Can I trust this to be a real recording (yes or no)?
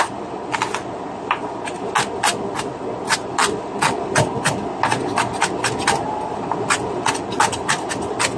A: yes